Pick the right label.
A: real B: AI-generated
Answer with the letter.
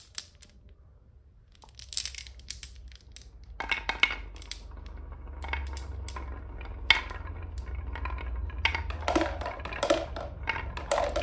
A